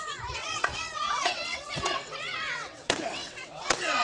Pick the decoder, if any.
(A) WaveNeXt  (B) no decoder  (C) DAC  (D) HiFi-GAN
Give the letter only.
A